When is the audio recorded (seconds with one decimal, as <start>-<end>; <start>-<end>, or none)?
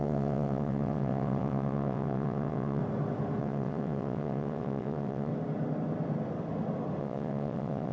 2.8-3.4; 5.3-7.0